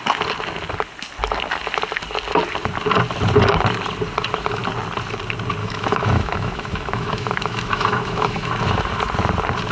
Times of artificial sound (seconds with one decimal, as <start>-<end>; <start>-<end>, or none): 5.6-8.5